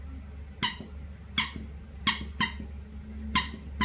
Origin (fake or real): real